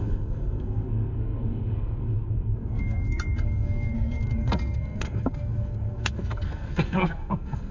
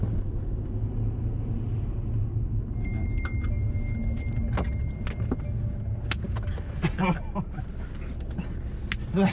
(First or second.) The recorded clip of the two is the second